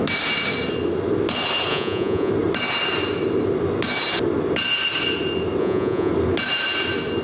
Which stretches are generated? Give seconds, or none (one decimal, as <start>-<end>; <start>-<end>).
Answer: 1.7-2.3; 5.6-6.1